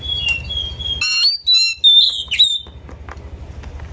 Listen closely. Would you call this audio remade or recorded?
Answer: recorded